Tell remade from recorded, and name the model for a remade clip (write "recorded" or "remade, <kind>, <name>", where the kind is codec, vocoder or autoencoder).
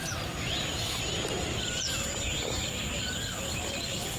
remade, vocoder, BigVGAN v2